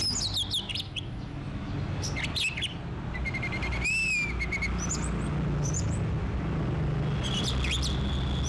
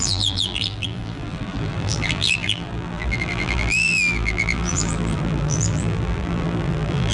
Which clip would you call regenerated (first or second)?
second